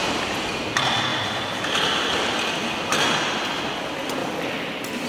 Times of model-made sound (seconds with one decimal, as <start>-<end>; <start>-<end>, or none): none